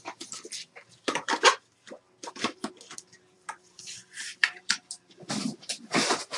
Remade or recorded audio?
remade